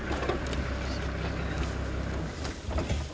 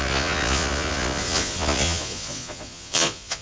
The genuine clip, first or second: first